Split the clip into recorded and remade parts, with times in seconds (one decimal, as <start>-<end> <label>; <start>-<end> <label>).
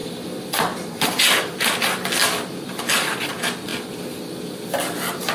0.0-3.2 remade; 3.2-3.7 recorded; 3.7-4.4 remade; 4.4-5.3 recorded